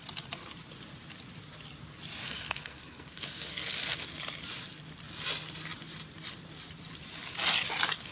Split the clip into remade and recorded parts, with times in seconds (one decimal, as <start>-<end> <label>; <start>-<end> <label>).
0.0-2.2 recorded; 2.2-4.1 remade; 4.1-8.1 recorded

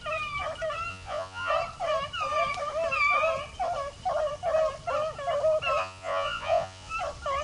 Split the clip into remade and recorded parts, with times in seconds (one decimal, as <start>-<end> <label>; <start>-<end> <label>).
0.0-0.9 recorded; 0.9-1.5 remade; 1.5-5.8 recorded; 5.8-6.9 remade; 6.9-7.4 recorded

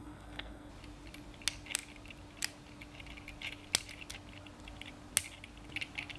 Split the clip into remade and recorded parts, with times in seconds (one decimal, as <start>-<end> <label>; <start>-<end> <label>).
0.0-0.7 remade; 0.7-6.2 recorded